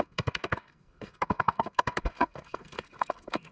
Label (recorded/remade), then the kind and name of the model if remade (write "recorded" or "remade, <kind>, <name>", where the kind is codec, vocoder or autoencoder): remade, codec, SNAC